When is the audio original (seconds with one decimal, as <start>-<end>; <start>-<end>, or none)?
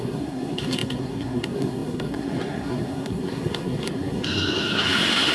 none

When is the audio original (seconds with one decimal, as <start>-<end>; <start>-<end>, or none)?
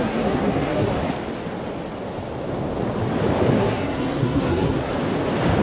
1.0-3.6; 4.9-5.6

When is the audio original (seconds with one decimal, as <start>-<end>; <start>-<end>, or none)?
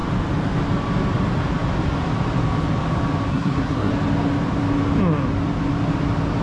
0.0-3.3; 3.9-6.4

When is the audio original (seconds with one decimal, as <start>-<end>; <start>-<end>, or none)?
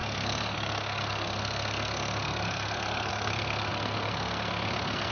none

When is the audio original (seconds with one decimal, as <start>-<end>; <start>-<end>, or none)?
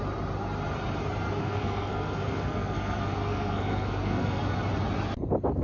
0.0-1.4; 4.4-5.6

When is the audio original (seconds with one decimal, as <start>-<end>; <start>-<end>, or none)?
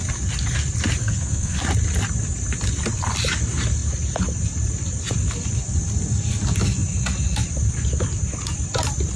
0.0-1.0; 1.6-9.2